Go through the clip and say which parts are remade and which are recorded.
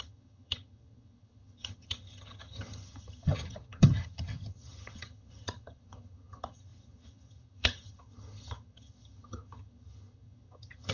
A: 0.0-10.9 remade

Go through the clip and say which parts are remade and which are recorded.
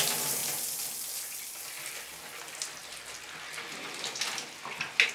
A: 0.0-5.1 recorded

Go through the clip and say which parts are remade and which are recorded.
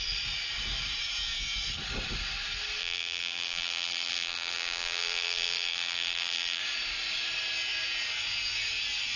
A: 0.0-2.8 recorded; 2.8-6.6 remade; 6.6-9.2 recorded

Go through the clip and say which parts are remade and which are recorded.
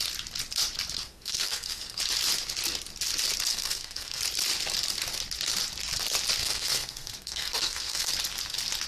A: 0.0-1.0 recorded; 1.0-2.0 remade; 2.0-3.5 recorded; 3.5-4.2 remade; 4.2-6.4 recorded; 6.4-8.1 remade; 8.1-8.9 recorded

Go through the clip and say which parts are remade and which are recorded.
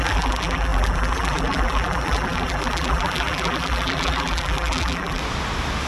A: 0.0-5.2 remade; 5.2-5.9 recorded